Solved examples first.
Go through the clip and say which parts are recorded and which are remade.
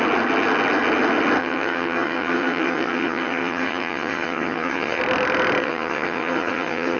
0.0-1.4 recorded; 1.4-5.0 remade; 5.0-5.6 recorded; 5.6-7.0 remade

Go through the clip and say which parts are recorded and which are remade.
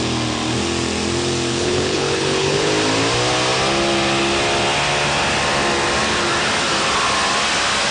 0.0-1.5 recorded; 1.5-2.7 remade; 2.7-7.9 recorded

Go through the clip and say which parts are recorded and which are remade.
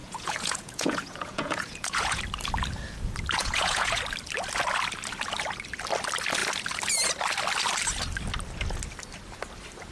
0.0-2.2 remade; 2.2-3.4 recorded; 3.4-4.0 remade; 4.0-9.9 recorded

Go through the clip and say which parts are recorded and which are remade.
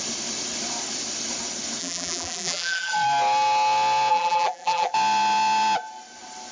0.0-1.8 recorded; 1.8-2.9 remade; 2.9-4.1 recorded; 4.1-4.9 remade; 4.9-6.5 recorded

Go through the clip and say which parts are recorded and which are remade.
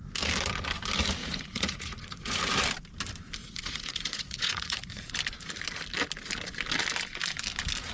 0.0-1.2 recorded; 1.2-2.4 remade; 2.4-3.4 recorded; 3.4-5.1 remade; 5.1-7.9 recorded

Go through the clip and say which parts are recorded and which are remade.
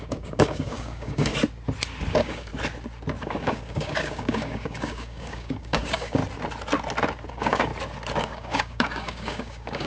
0.0-1.3 remade; 1.3-2.1 recorded; 2.1-2.5 remade; 2.5-3.2 recorded; 3.2-6.2 remade; 6.2-7.3 recorded; 7.3-7.7 remade; 7.7-8.2 recorded; 8.2-9.9 remade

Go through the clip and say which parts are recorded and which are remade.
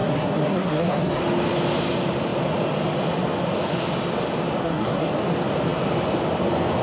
0.0-1.2 remade; 1.2-4.6 recorded; 4.6-5.1 remade; 5.1-6.8 recorded